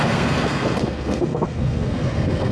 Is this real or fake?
fake